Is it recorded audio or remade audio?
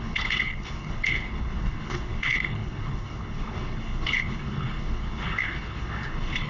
remade